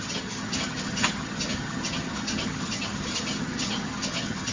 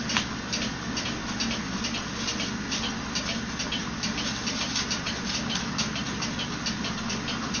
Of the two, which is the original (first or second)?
second